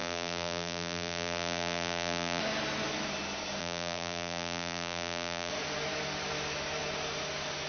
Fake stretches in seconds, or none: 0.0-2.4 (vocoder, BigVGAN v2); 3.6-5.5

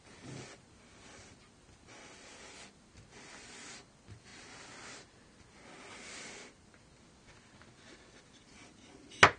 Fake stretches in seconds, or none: none

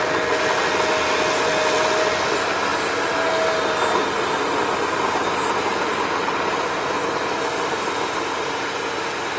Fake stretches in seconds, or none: none

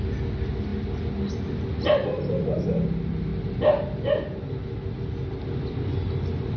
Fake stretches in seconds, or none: none

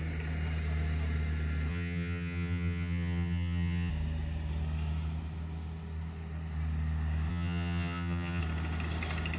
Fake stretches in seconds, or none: 1.7-3.9 (vocoder, HiFi-GAN); 7.3-8.4

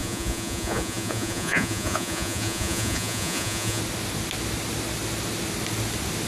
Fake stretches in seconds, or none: 0.0-3.8 (vocoder, Vocos)

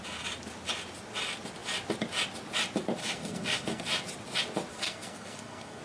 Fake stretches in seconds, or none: 3.0-3.8 (codec, SNAC); 4.7-5.8

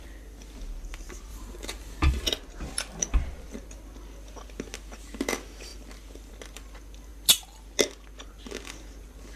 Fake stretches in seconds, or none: 1.3-2.1 (vocoder, BigVGAN v2)